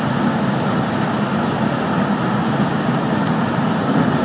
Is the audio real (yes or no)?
yes